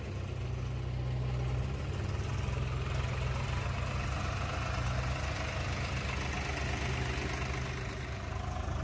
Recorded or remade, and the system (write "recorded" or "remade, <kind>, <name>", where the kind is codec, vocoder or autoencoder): recorded